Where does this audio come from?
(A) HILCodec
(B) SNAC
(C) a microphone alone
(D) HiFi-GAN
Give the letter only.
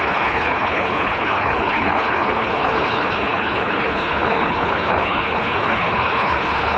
A